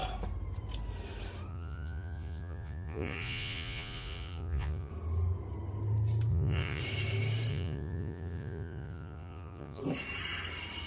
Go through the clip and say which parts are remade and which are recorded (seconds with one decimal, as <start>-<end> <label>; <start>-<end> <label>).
0.0-1.5 recorded; 1.5-4.9 remade; 4.9-6.3 recorded; 6.3-6.8 remade; 6.8-7.5 recorded; 7.5-9.8 remade; 9.8-10.9 recorded

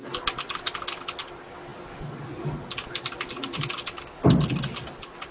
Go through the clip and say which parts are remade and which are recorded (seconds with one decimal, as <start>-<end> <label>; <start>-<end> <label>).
0.0-5.3 recorded

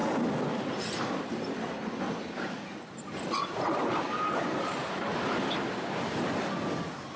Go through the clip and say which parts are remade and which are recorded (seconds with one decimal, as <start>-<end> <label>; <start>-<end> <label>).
0.0-7.2 recorded